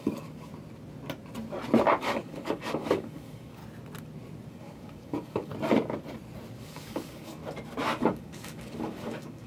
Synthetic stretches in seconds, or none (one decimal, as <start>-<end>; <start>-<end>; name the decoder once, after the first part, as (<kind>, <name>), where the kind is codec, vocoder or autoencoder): 0.0-0.5 (codec, DAC); 2.0-3.6; 4.5-5.5; 6.6-7.4; 8.0-9.5